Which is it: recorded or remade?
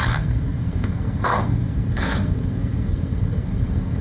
remade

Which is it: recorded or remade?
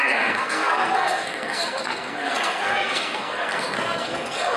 remade